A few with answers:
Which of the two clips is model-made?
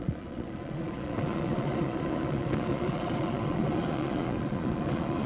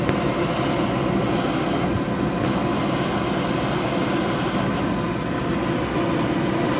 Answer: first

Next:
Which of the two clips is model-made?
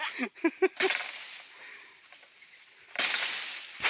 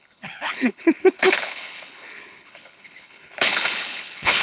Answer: second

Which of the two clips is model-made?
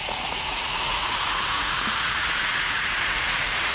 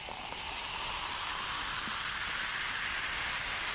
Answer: first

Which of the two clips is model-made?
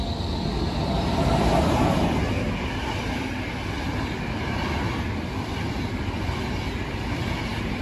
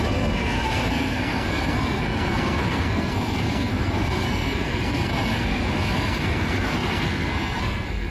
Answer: second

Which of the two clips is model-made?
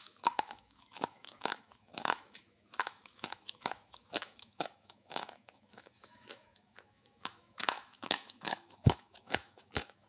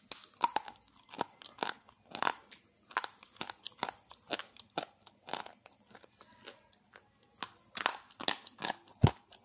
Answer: first